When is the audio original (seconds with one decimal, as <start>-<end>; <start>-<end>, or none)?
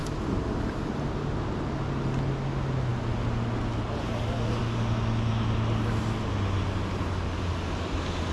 0.0-8.3